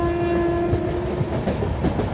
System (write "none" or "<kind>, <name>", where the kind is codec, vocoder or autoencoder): none